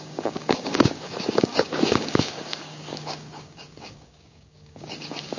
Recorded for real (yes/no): no